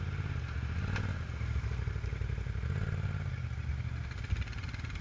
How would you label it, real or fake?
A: real